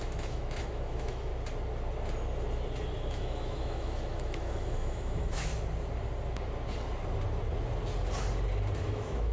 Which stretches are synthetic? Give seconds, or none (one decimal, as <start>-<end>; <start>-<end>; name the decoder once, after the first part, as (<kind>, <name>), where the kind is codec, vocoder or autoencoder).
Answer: 0.0-1.3 (autoencoder, DAC-VAE); 3.1-5.5; 8.8-9.3